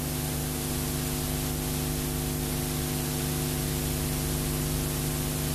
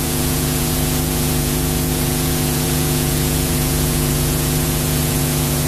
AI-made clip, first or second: second